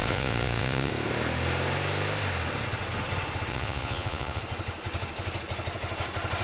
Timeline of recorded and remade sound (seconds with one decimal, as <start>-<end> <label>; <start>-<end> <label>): 0.0-0.9 remade; 0.9-3.5 recorded; 3.5-4.4 remade; 4.4-6.4 recorded

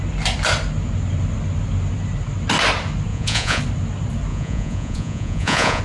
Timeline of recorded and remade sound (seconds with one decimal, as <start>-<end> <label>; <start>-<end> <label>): 0.0-3.1 recorded; 3.1-3.6 remade; 3.6-4.3 recorded; 4.3-5.8 remade

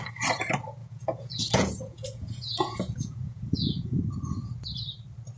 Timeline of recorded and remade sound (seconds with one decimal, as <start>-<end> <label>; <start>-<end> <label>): 0.0-0.8 recorded; 0.8-4.0 remade; 4.0-5.4 recorded

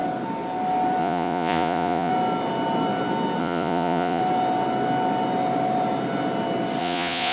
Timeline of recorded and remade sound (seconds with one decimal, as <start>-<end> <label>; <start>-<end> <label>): 0.0-1.0 recorded; 1.0-2.1 remade; 2.1-3.4 recorded; 3.4-4.2 remade; 4.2-6.8 recorded; 6.8-7.3 remade